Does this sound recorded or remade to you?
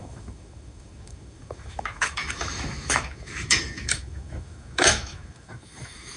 remade